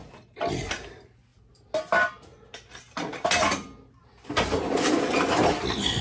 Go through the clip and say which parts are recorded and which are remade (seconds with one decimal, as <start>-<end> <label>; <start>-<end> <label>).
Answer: 0.0-0.5 remade; 0.5-6.0 recorded